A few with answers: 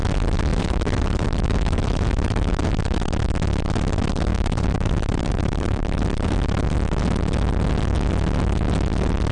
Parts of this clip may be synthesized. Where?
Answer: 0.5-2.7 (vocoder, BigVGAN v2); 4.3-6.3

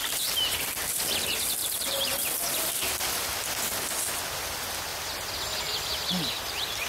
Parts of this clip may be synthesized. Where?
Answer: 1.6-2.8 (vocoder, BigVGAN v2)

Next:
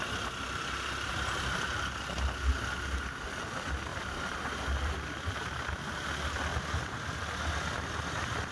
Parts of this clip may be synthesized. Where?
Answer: 3.9-4.9 (vocoder, BigVGAN v2)

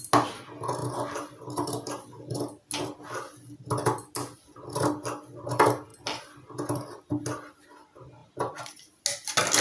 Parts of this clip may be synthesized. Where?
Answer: none